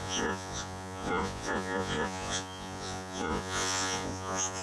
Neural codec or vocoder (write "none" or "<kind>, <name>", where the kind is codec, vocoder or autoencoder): vocoder, Vocos